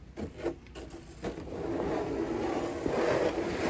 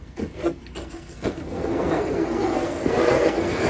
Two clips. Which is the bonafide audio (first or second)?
first